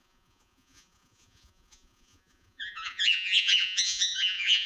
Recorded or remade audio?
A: remade